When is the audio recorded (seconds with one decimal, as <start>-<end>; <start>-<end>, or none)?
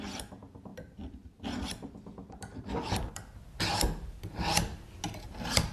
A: 0.0-5.7